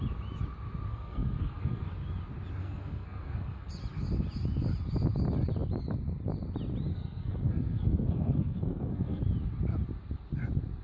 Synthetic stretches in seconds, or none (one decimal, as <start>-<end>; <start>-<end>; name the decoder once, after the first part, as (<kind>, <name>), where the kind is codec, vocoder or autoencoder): 0.9-1.8 (codec, SNAC); 2.6-3.7; 6.9-9.2